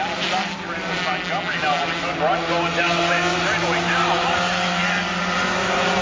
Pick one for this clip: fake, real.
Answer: real